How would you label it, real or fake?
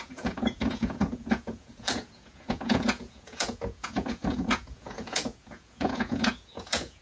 fake